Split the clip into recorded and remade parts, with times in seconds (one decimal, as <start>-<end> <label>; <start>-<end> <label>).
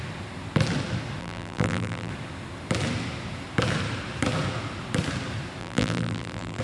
0.0-1.2 recorded; 1.2-2.1 remade; 2.1-5.6 recorded; 5.6-6.6 remade